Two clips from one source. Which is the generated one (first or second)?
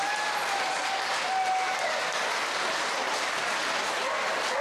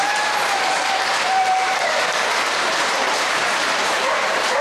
second